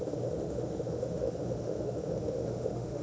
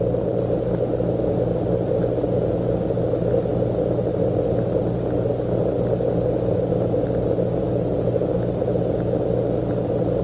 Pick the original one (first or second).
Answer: second